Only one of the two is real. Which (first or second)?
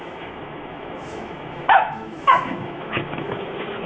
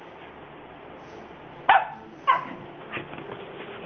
second